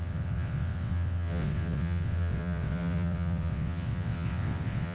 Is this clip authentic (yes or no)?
no